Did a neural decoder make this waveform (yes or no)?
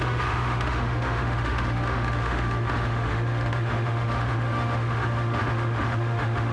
yes